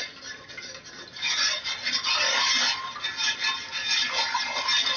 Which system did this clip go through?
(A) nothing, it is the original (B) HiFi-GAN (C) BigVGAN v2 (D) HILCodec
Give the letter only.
A